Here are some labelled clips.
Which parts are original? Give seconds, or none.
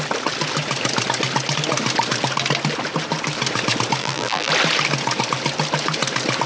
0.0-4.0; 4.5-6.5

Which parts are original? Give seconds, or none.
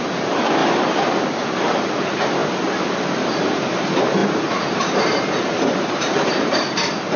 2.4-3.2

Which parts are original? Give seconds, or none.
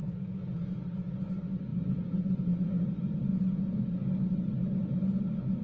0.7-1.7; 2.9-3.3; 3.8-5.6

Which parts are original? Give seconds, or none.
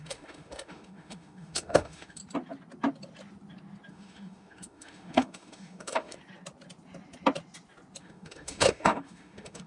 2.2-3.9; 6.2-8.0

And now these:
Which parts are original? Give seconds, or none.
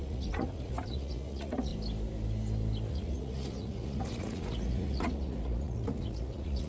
1.7-2.9